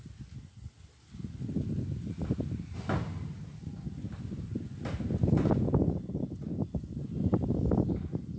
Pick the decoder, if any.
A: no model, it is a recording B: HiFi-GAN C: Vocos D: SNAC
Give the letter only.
A